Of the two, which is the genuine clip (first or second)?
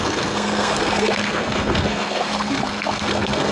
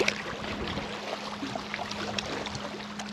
second